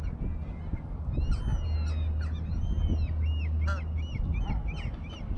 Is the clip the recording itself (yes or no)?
yes